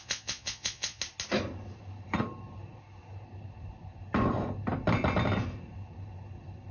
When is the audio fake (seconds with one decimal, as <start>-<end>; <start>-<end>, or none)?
0.0-1.0

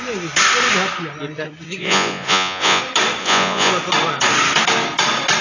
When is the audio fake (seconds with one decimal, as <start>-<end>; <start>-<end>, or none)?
1.8-2.8; 3.2-3.7